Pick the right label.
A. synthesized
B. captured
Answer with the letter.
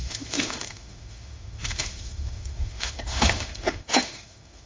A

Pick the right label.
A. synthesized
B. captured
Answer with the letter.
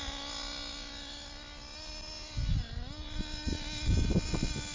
B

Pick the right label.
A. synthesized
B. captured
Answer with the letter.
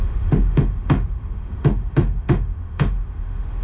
A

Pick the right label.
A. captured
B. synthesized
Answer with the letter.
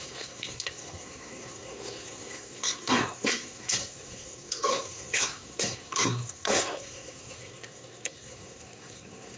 B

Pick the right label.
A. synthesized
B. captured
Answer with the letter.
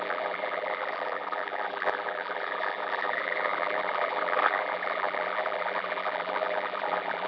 A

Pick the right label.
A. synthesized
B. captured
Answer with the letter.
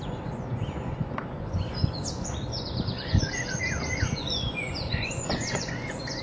A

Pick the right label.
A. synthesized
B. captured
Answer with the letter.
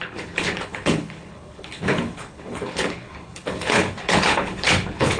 A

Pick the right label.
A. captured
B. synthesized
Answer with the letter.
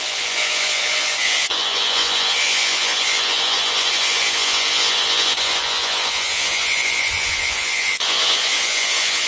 B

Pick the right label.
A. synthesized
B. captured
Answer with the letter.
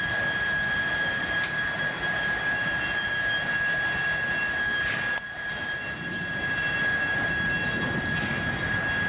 B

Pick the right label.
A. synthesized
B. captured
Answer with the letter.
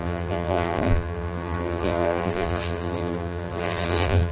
A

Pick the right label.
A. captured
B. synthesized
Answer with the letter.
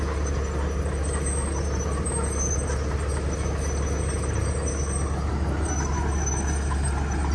A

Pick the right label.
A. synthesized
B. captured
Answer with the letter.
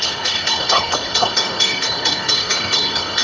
A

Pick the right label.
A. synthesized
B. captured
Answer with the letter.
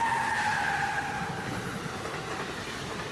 B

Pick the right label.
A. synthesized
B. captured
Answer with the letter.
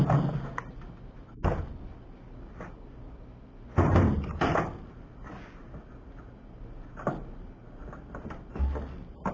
B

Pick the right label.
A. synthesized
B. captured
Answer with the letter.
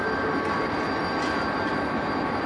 B